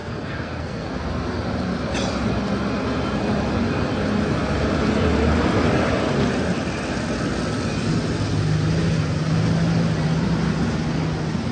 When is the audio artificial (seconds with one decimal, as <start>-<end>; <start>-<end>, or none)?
0.0-1.0